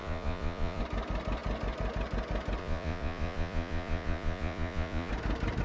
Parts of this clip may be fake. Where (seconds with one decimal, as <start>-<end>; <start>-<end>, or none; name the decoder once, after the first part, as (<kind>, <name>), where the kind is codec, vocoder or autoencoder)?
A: 0.0-0.8 (vocoder, Vocos); 2.6-5.1